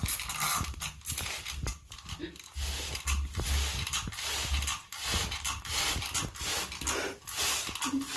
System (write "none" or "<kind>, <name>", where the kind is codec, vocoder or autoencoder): none